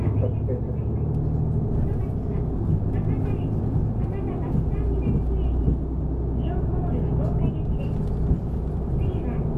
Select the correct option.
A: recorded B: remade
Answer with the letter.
A